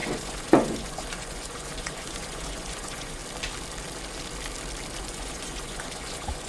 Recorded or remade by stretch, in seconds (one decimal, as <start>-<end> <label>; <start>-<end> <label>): 0.0-3.2 remade; 3.2-5.0 recorded; 5.0-6.5 remade